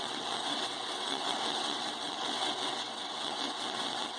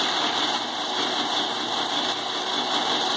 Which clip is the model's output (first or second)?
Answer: first